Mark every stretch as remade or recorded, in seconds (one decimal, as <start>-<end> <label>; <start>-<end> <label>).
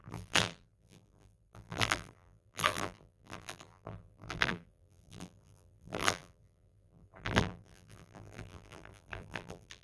0.0-9.8 remade